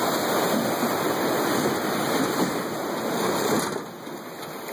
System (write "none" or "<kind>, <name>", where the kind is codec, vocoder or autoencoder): none